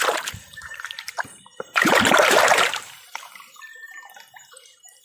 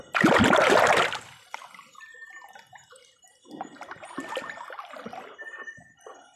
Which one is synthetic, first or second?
first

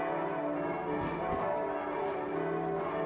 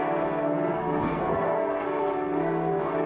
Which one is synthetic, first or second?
second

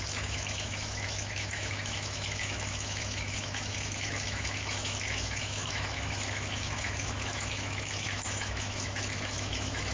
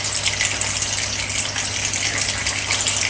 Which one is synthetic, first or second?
first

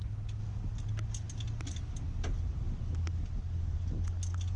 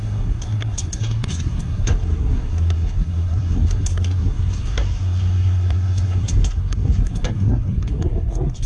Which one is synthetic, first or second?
second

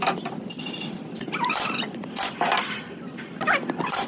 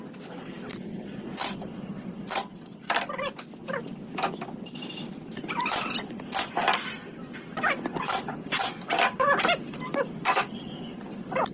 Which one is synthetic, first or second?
first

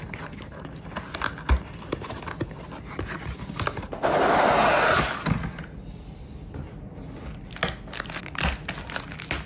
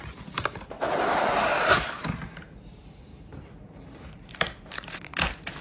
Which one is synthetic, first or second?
second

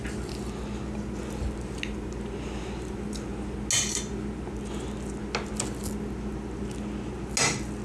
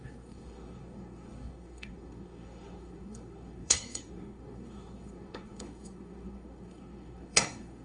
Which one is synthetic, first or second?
second